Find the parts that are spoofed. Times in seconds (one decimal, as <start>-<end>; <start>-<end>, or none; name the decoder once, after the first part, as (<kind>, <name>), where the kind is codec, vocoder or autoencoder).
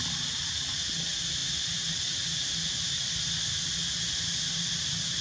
none